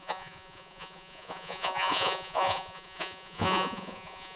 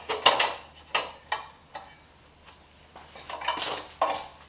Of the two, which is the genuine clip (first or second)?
second